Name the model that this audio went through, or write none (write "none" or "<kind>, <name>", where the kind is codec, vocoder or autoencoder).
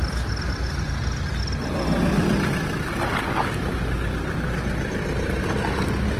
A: none